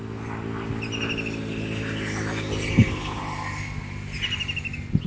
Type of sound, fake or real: real